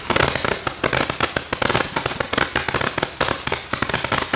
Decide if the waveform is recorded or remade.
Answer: recorded